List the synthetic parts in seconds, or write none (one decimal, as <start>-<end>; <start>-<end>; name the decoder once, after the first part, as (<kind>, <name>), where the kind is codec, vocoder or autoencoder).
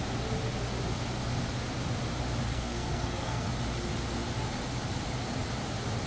2.5-3.5 (codec, SNAC)